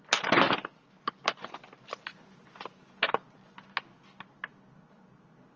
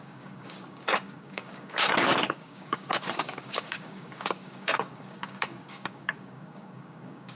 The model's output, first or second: second